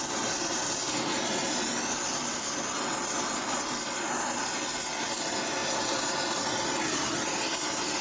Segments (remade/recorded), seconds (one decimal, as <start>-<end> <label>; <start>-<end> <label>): 0.0-8.0 recorded